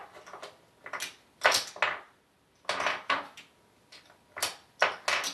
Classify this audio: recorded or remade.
recorded